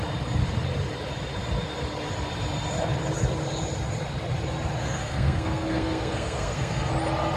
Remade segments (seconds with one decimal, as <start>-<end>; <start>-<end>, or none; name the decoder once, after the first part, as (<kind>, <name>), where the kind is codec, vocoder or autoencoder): 4.8-6.9 (codec, SNAC)